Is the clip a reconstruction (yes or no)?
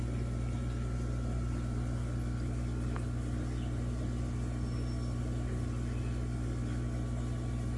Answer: no